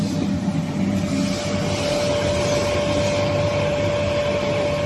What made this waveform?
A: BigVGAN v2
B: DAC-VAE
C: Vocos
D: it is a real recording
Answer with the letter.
D